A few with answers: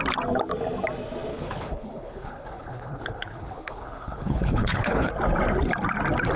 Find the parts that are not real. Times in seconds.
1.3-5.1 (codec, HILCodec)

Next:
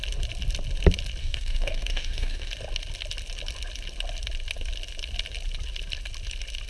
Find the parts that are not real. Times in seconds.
1.2-2.5 (codec, DAC)

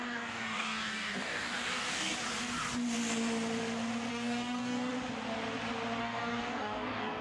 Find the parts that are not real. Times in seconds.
0.0-2.1 (codec, DAC); 4.1-4.9; 6.0-7.2

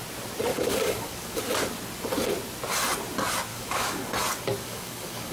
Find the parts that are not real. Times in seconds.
0.5-1.4 (codec, DAC); 3.5-4.1; 4.6-5.3

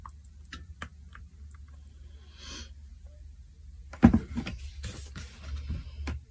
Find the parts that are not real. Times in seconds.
none

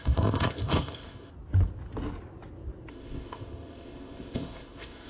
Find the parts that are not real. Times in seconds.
0.0-1.3 (codec, ZipCodec); 2.9-5.1

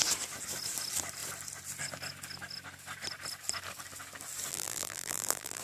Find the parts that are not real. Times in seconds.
4.5-5.6 (vocoder, BigVGAN v2)